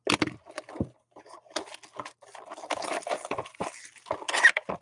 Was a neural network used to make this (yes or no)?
no